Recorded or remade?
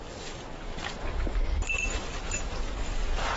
recorded